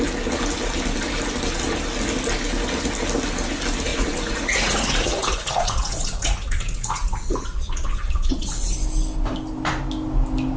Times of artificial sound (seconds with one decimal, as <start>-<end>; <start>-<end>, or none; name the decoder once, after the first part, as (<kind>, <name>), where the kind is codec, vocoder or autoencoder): 3.9-8.5 (vocoder, Vocos)